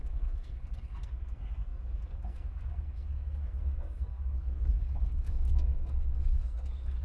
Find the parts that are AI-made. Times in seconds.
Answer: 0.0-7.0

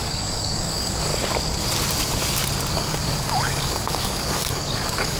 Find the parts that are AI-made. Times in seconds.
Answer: 0.0-1.1; 2.7-5.2